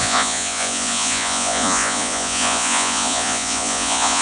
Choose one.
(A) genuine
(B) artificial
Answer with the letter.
B